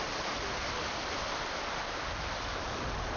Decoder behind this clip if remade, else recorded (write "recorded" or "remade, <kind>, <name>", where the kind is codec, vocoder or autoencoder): recorded